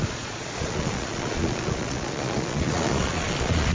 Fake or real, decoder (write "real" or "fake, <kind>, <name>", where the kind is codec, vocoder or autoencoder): fake, vocoder, Vocos